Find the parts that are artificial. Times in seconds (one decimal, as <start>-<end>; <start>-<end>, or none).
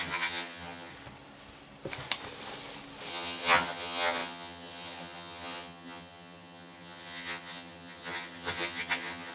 0.0-0.9; 3.1-9.3